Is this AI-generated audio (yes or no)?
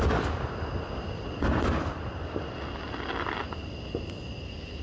no